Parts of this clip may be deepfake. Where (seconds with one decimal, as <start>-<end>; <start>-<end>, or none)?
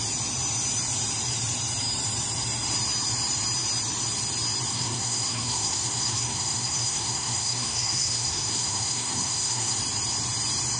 4.7-9.8